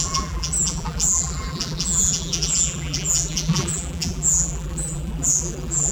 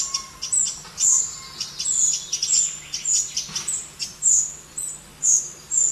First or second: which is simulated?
first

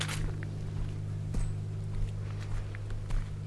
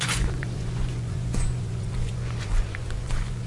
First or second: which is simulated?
second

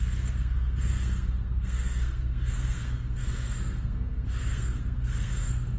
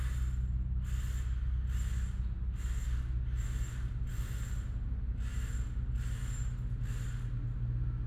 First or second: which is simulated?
first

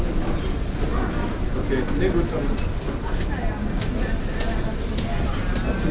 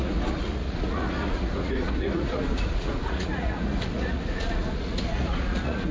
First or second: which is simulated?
second